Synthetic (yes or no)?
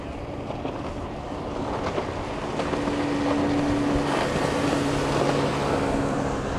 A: no